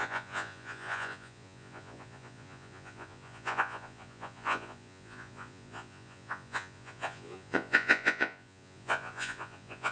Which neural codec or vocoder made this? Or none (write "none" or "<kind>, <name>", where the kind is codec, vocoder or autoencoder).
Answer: vocoder, Vocos